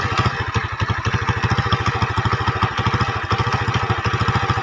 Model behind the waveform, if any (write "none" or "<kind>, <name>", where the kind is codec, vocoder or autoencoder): none